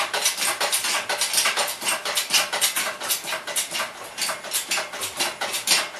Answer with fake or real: real